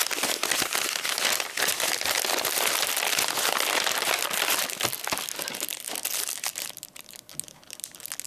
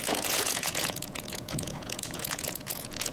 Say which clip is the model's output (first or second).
second